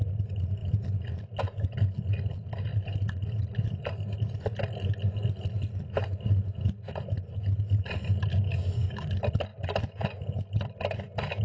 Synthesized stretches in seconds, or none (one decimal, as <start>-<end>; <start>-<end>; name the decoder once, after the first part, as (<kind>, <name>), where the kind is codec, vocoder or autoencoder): 8.3-9.1 (codec, DAC)